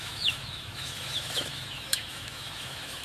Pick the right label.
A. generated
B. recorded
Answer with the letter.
A